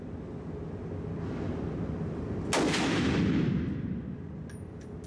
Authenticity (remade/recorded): recorded